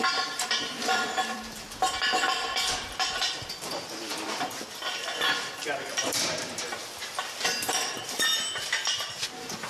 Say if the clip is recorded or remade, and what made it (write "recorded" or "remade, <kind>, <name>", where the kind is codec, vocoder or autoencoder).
remade, vocoder, BigVGAN v2